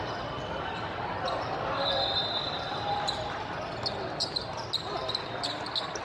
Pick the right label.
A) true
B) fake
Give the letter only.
A